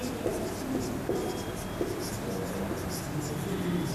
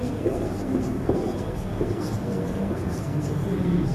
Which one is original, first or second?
first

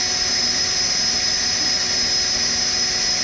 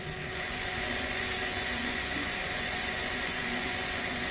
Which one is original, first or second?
first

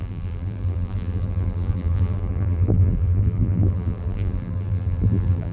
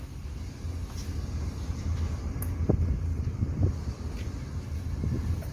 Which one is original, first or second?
second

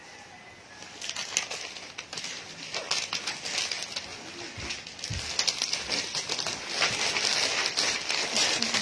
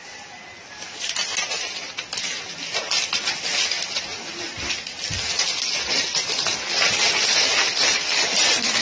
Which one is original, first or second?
first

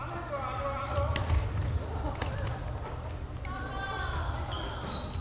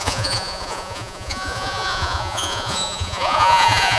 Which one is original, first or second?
first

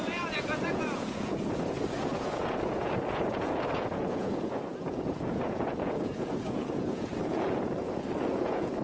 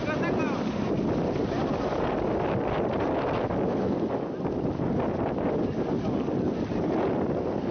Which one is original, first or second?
second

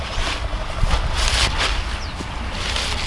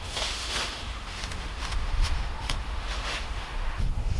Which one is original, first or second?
first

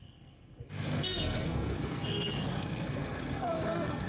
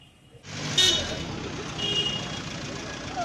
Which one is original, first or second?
second